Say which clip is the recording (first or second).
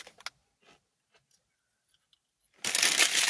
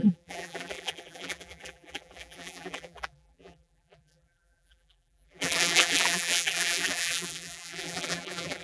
first